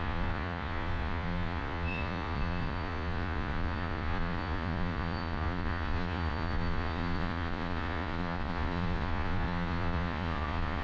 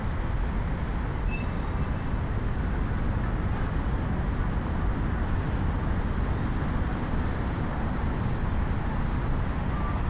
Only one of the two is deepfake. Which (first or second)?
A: first